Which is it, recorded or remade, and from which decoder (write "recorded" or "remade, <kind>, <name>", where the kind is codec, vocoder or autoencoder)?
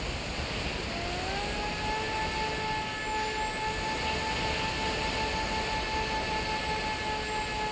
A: recorded